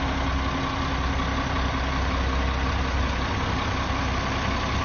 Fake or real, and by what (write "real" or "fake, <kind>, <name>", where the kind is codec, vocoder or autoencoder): real